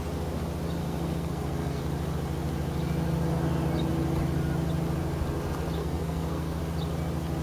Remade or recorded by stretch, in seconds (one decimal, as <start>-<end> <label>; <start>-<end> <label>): 0.0-0.8 recorded; 0.8-1.8 remade; 1.8-5.8 recorded; 5.8-6.6 remade; 6.6-7.4 recorded